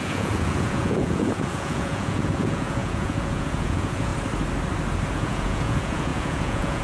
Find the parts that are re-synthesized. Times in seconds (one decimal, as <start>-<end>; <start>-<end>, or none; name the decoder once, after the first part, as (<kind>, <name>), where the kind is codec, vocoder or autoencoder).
0.0-4.1 (vocoder, Vocos); 5.1-6.8